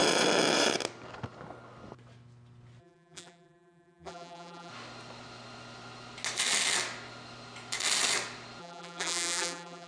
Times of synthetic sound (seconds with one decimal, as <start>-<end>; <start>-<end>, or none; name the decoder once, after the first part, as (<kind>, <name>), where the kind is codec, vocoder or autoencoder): 2.8-4.7 (vocoder, BigVGAN v2); 8.6-9.9